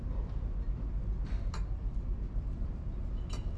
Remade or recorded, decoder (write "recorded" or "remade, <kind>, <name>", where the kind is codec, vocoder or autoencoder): recorded